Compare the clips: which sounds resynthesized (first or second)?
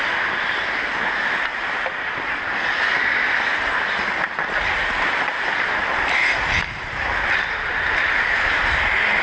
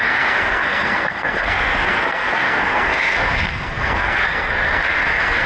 second